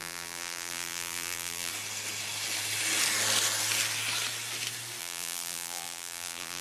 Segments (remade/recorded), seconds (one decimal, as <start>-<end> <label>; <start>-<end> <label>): 0.0-1.7 remade; 1.7-5.0 recorded; 5.0-6.6 remade